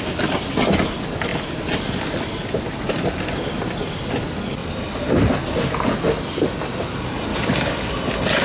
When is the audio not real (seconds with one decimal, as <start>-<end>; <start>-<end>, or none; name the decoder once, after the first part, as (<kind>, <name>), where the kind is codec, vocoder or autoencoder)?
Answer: none